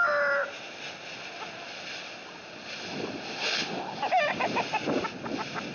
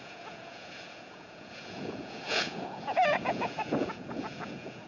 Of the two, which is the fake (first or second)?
second